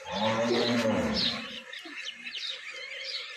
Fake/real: fake